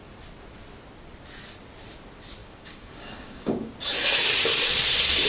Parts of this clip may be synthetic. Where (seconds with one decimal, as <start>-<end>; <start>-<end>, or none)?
2.4-3.7